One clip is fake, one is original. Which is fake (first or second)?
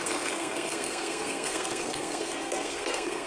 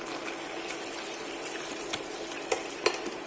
first